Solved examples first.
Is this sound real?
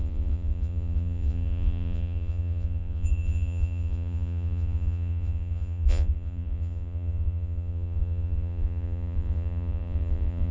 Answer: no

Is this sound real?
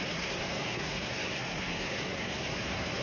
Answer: no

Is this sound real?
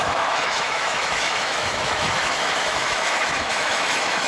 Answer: no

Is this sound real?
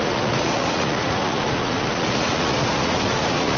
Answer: no